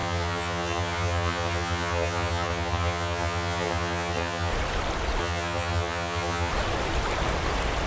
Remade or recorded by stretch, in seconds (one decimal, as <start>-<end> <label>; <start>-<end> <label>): 0.0-4.5 remade; 4.5-5.2 recorded; 5.2-6.5 remade; 6.5-7.9 recorded

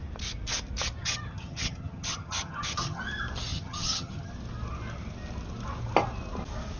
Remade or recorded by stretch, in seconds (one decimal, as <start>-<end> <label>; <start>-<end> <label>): 0.0-1.0 recorded; 1.0-3.0 remade; 3.0-3.5 recorded; 3.5-4.3 remade; 4.3-6.8 recorded

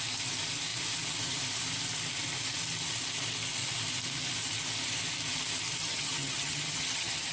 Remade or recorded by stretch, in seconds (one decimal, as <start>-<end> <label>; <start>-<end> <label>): 0.0-5.9 recorded; 5.9-7.3 remade

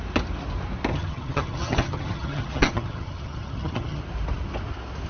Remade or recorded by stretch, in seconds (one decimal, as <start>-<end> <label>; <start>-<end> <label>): 0.0-0.9 recorded; 0.9-4.0 remade; 4.0-5.1 recorded

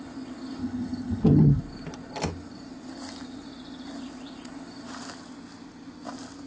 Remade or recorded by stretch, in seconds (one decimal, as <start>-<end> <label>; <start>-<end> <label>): 0.0-0.6 recorded; 0.6-1.6 remade; 1.6-6.5 recorded

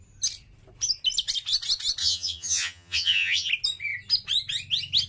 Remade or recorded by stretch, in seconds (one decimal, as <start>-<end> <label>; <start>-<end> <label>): 0.0-2.0 recorded; 2.0-3.5 remade; 3.5-5.1 recorded

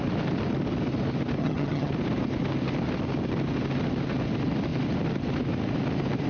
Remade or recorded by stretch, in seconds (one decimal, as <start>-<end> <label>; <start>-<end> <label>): 0.0-1.4 recorded; 1.4-1.9 remade; 1.9-6.3 recorded